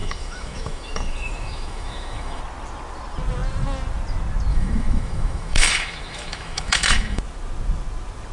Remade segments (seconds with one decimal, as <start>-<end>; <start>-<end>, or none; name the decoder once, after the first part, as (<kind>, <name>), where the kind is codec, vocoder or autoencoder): 0.0-2.4 (autoencoder, DAC-VAE); 4.5-7.2